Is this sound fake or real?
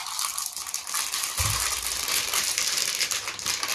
real